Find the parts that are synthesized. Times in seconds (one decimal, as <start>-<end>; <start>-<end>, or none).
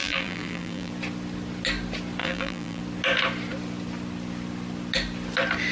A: 0.0-0.9; 2.2-2.8